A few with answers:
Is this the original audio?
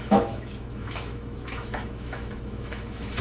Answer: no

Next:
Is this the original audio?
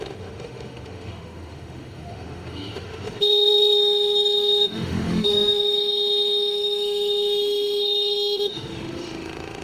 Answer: no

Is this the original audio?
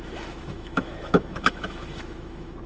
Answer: no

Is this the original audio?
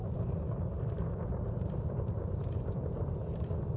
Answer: yes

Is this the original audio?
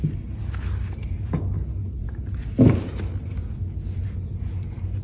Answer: yes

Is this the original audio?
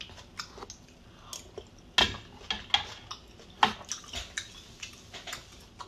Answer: yes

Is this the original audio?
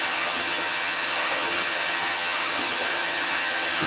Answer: no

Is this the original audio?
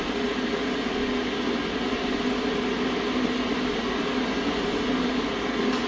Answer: yes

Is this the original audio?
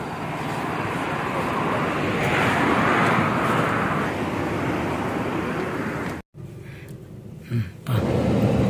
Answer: yes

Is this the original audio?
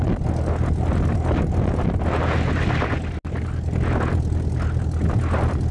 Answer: yes